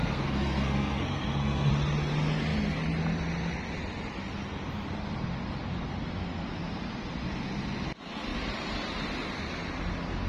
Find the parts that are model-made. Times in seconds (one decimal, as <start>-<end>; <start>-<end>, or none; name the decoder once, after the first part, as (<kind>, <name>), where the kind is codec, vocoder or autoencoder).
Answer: 0.0-1.7 (codec, SNAC)